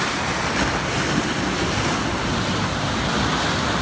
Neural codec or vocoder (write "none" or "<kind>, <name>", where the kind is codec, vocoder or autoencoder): none